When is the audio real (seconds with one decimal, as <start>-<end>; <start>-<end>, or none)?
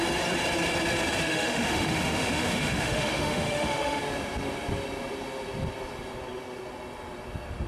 0.0-1.2; 4.0-7.7